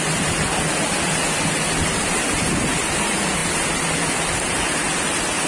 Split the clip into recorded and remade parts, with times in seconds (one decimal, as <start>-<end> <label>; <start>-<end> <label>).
0.0-5.5 recorded